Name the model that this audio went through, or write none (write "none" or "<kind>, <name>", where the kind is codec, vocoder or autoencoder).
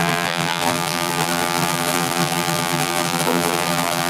vocoder, BigVGAN v2